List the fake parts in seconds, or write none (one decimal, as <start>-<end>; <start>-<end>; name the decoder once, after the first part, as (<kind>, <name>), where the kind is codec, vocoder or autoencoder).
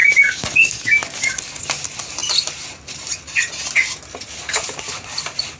0.0-1.6 (codec, DAC)